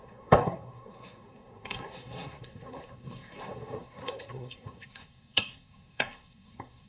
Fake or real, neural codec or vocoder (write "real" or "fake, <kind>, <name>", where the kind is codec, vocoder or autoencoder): fake, codec, SNAC